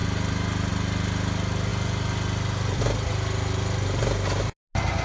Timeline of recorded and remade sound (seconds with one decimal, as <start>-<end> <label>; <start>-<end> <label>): 0.0-5.0 recorded